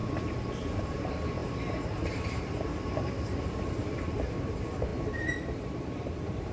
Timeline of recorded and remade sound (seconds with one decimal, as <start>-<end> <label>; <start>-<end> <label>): 0.0-0.8 recorded; 0.8-6.5 remade